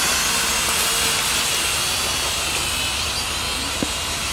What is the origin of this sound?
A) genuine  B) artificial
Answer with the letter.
A